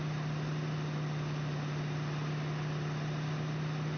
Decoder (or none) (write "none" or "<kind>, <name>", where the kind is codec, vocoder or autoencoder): none